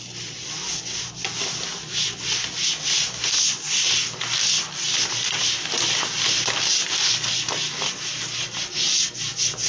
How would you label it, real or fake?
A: real